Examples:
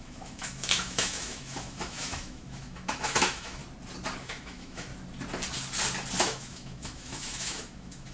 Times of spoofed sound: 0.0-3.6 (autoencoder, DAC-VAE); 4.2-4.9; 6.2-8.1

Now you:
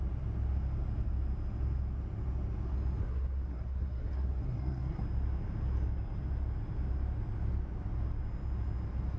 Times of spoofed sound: 3.0-5.0 (codec, SNAC)

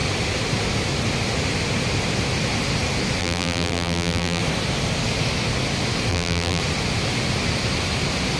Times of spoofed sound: 3.2-4.4 (vocoder, BigVGAN v2); 6.1-6.6

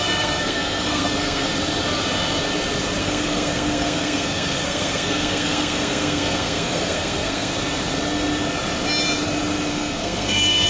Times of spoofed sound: 0.0-1.5 (codec, SNAC); 3.0-7.5; 9.7-10.7

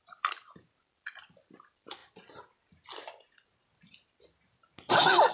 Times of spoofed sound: 0.0-2.0 (vocoder, BigVGAN v2)